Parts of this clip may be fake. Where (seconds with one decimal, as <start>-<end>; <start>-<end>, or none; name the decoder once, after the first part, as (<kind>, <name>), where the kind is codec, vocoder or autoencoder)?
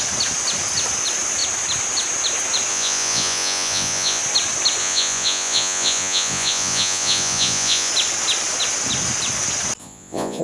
2.7-4.2 (vocoder, Vocos); 4.8-7.9; 9.8-10.4